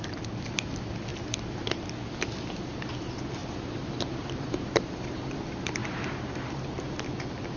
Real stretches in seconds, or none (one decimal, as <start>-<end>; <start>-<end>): 0.0-3.4; 5.1-5.8; 6.4-7.6